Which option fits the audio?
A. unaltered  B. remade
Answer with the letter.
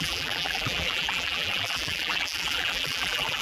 B